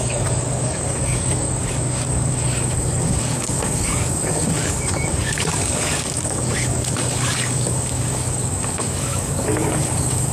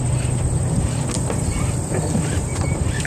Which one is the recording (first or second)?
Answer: second